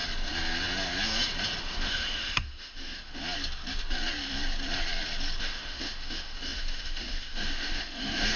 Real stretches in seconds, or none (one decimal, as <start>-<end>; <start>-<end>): 0.0-1.6; 3.2-5.4